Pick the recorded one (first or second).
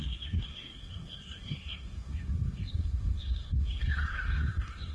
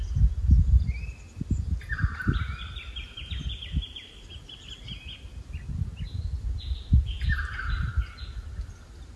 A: second